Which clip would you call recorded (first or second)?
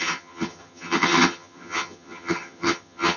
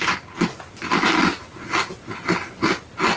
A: second